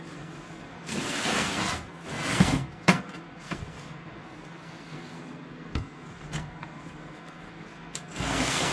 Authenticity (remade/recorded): remade